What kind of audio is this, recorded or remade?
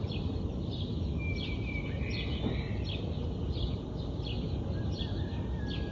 recorded